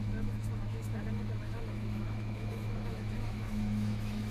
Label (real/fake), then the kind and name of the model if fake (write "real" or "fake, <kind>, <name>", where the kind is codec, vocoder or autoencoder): fake, autoencoder, DAC-VAE